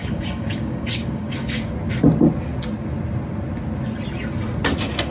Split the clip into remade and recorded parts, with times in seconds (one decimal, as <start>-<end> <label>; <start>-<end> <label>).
0.0-1.6 remade; 1.6-5.1 recorded